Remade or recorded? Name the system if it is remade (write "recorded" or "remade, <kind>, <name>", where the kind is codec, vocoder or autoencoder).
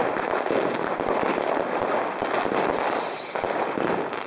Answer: recorded